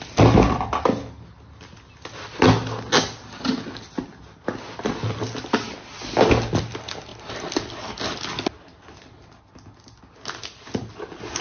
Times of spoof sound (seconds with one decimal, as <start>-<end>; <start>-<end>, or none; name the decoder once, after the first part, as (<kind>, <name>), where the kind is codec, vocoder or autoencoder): none